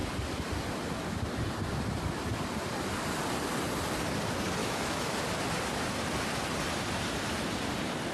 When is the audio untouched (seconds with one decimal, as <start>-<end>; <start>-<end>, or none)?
0.0-4.6; 5.1-8.1